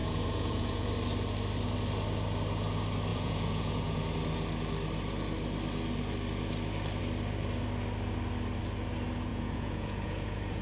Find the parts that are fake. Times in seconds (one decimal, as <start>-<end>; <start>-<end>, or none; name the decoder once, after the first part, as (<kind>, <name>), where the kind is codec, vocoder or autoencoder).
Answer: 0.0-0.9 (vocoder, Vocos); 3.1-4.0; 9.3-10.6